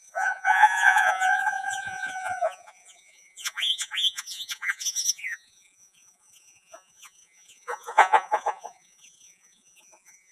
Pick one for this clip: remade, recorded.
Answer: remade